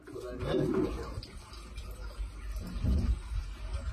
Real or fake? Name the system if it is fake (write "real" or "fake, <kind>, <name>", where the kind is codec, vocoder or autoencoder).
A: real